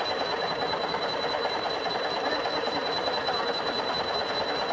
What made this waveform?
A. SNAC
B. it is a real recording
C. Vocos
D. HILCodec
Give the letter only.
B